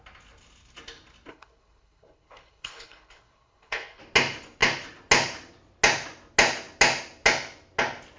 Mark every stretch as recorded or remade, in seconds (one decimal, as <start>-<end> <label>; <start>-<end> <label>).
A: 0.0-1.3 recorded; 1.3-4.0 remade; 4.0-8.2 recorded